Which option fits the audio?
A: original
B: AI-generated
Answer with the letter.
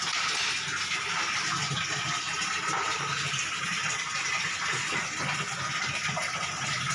A